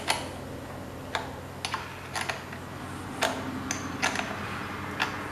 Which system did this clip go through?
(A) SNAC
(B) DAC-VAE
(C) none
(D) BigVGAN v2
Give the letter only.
C